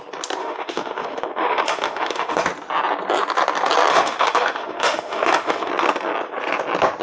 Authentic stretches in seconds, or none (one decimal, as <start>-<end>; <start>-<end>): 0.0-0.4; 2.4-3.9; 5.7-7.0